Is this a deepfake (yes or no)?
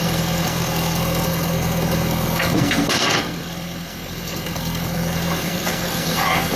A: yes